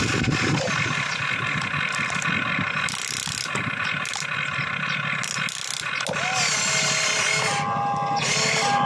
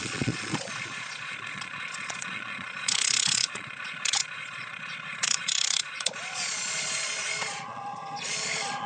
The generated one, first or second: second